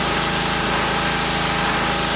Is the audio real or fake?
real